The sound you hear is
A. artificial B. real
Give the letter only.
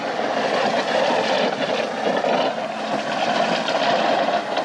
B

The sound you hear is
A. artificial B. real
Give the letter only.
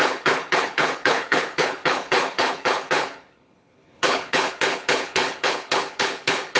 A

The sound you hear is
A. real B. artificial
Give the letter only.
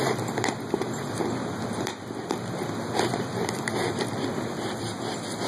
B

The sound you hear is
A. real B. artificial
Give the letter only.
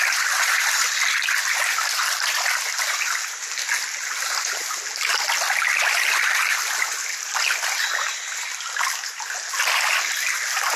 A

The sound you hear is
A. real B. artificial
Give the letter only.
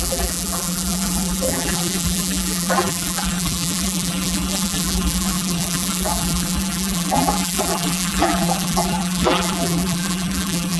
B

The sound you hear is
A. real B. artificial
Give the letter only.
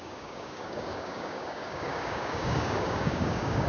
B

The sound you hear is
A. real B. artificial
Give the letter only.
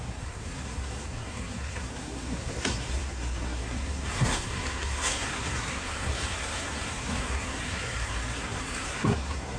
B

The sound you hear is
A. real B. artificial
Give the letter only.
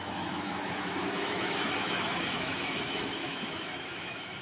B